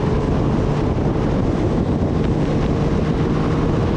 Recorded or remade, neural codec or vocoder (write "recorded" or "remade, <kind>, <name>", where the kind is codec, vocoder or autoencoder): recorded